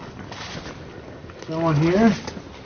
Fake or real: real